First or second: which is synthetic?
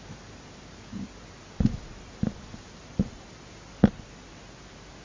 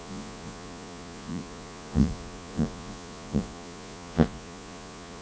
second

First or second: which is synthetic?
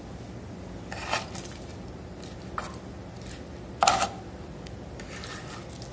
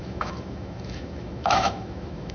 second